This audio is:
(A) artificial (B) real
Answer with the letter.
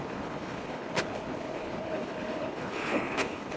A